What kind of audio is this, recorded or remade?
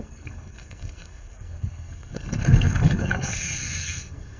remade